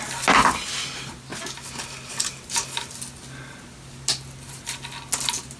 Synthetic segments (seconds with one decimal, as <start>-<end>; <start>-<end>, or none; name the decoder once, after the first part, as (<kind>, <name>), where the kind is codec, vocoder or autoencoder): none